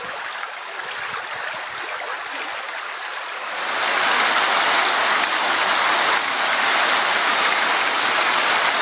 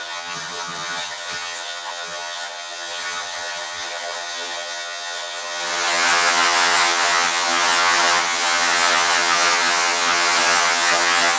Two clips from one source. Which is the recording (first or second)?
first